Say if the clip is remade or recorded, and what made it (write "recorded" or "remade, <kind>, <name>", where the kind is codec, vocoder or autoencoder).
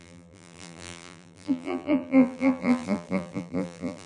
remade, vocoder, BigVGAN v2